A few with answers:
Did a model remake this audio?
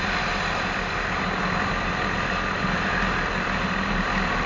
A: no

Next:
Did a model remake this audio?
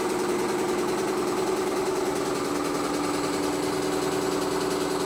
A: no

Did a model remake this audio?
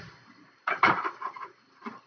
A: yes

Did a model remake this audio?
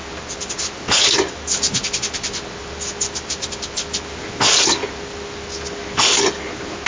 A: no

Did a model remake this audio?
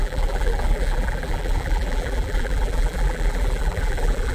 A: yes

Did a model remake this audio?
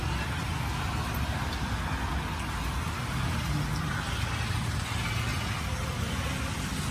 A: no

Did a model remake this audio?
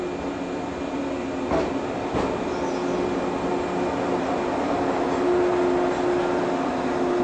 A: no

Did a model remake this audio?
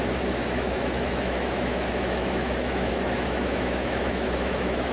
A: yes